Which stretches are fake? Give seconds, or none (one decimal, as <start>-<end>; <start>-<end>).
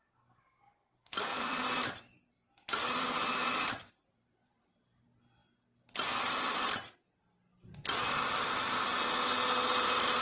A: 1.3-4.7